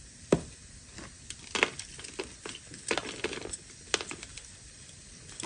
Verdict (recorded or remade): recorded